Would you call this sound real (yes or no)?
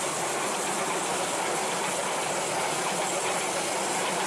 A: yes